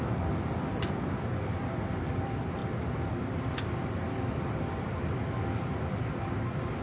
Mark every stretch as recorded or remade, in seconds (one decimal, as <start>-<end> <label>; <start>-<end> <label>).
0.0-2.6 remade; 2.6-6.8 recorded